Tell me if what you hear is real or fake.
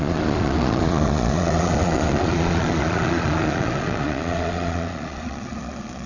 fake